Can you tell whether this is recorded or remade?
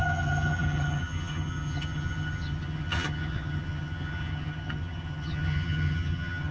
remade